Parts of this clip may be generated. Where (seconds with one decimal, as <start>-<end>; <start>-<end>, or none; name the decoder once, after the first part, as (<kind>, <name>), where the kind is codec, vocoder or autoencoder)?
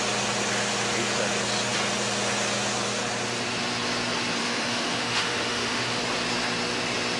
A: 4.4-6.0 (autoencoder, DAC-VAE)